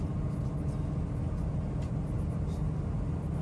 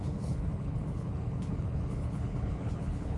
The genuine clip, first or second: first